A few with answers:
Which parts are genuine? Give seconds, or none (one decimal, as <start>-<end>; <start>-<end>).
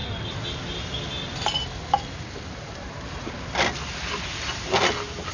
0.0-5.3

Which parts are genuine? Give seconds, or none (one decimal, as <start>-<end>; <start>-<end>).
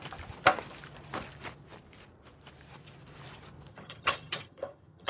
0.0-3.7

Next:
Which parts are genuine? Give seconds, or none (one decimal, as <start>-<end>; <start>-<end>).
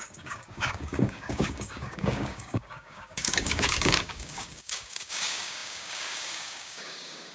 none